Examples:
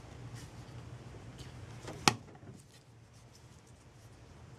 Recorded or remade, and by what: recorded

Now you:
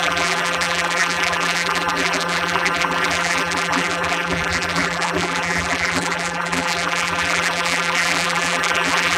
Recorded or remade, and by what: remade, vocoder, BigVGAN v2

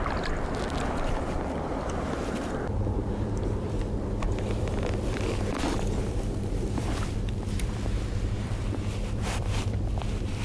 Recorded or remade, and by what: remade, vocoder, BigVGAN v2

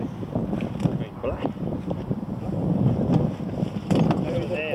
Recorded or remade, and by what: recorded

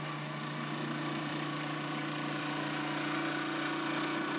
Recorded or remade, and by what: remade, vocoder, BigVGAN v2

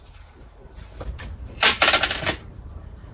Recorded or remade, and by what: remade, vocoder, BigVGAN v2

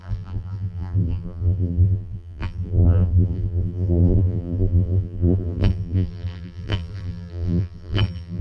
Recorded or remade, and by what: remade, vocoder, BigVGAN v2